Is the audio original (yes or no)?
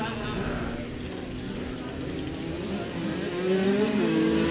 yes